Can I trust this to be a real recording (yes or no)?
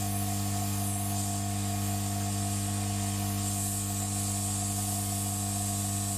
yes